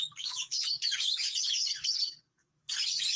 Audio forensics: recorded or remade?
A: remade